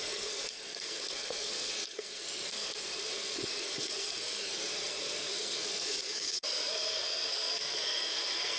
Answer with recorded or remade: remade